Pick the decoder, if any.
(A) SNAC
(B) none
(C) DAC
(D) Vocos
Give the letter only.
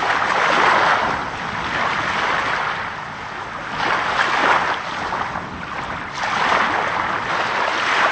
B